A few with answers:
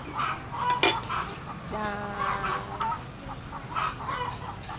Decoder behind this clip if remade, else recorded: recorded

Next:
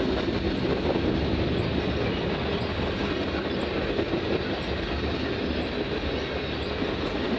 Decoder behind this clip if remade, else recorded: recorded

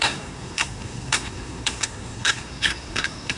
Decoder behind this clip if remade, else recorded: remade, codec, SNAC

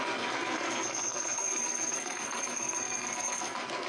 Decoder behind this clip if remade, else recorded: remade, codec, SNAC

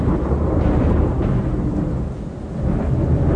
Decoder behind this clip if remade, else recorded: recorded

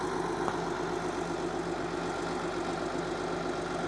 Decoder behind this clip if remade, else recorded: recorded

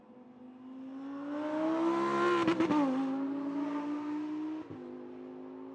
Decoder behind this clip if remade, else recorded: recorded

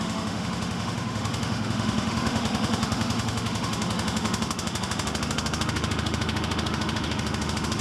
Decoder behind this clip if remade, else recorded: remade, autoencoder, DAC-VAE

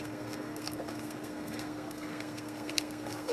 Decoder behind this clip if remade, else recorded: remade, codec, SNAC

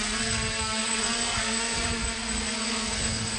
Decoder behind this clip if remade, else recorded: remade, codec, SNAC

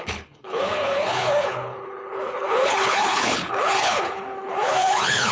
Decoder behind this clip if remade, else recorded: remade, codec, HILCodec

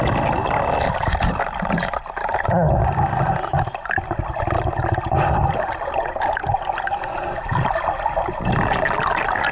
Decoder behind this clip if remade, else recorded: recorded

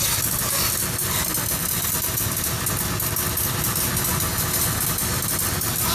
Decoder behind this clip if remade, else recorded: recorded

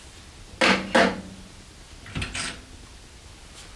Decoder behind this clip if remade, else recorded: recorded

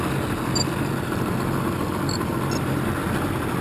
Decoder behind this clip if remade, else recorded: recorded